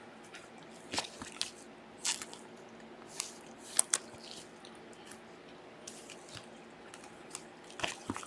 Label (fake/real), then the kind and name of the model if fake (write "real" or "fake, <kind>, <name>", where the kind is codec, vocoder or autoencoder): real